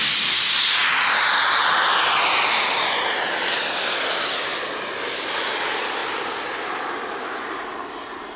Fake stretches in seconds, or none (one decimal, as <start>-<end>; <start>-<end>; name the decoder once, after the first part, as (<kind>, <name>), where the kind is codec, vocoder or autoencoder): none